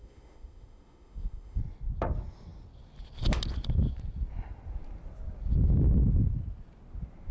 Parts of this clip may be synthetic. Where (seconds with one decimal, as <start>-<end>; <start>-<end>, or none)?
0.0-1.6